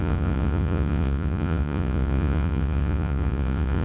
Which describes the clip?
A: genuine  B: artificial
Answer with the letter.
B